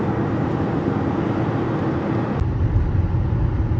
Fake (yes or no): no